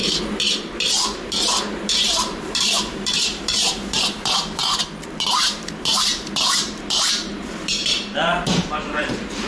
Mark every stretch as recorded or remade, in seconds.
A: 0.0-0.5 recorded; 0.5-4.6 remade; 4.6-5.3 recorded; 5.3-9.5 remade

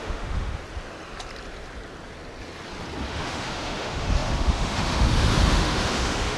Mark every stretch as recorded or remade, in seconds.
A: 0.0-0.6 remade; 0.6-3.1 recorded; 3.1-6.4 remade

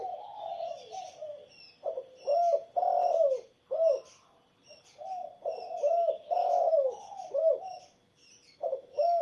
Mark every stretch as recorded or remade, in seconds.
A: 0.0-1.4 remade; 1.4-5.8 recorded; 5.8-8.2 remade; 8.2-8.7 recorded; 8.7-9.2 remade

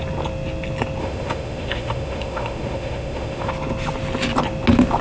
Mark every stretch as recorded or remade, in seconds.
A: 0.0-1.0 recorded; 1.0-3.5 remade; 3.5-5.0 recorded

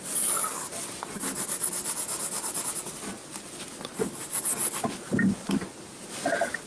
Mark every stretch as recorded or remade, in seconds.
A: 0.0-6.7 recorded

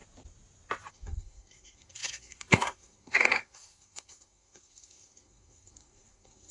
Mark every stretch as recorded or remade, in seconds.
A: 0.0-0.9 recorded; 0.9-6.5 remade

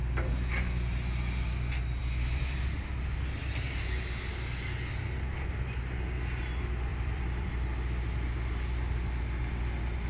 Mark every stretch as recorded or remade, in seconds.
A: 0.0-6.9 recorded; 6.9-7.5 remade; 7.5-10.1 recorded

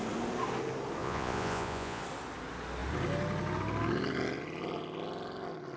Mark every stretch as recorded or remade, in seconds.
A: 0.0-1.0 recorded; 1.0-2.0 remade; 2.0-5.8 recorded